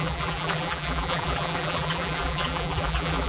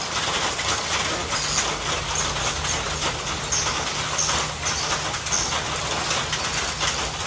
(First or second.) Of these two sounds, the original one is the second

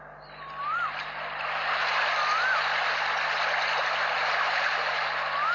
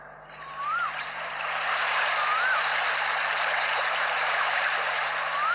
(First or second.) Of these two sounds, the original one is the first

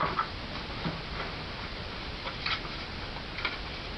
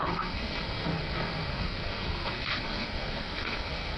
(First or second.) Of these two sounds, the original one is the first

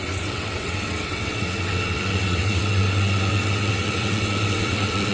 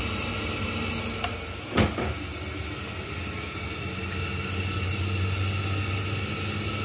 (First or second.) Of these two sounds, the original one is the second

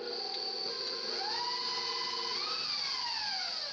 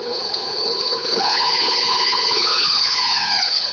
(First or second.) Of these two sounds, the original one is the first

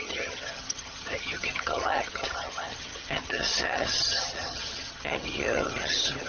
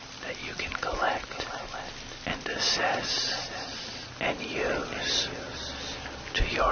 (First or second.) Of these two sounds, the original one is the second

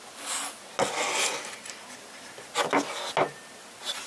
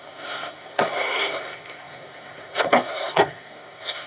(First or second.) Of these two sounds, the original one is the first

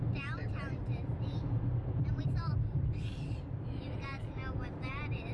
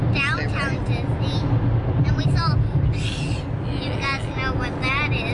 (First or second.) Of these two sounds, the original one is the second